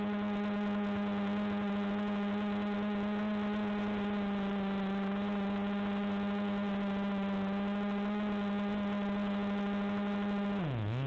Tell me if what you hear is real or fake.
real